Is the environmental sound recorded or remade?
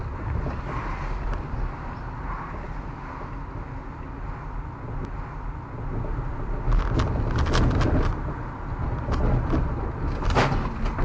recorded